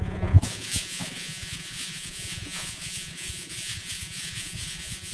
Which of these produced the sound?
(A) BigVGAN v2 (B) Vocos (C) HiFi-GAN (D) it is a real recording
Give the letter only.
B